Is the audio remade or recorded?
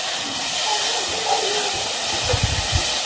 recorded